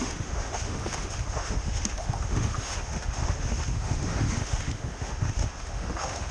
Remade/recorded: remade